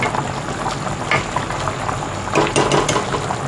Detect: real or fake real